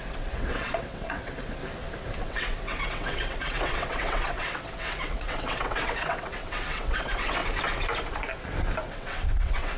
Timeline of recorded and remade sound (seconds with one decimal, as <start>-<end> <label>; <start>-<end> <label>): 0.0-1.6 remade; 1.6-2.2 recorded; 2.2-7.4 remade; 7.4-8.8 recorded; 8.8-9.8 remade